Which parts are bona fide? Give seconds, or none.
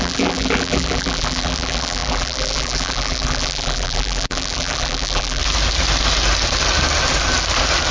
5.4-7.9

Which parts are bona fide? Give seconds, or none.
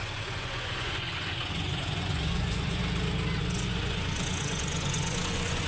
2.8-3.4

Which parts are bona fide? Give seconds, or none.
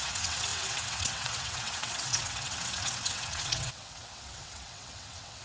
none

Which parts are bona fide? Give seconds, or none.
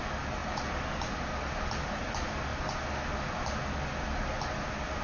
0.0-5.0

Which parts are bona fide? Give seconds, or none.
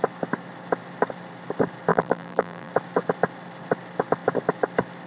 0.0-1.9; 2.7-5.1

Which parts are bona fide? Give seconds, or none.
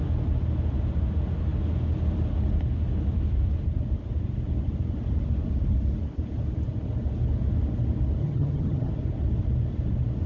0.0-8.2; 8.9-10.3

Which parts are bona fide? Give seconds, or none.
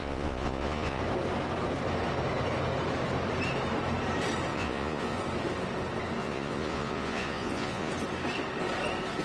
1.0-4.5; 5.2-6.2; 7.9-9.2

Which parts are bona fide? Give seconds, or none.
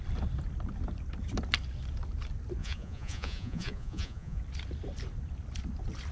0.0-2.6; 4.4-6.1